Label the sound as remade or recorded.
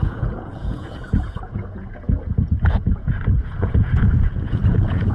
remade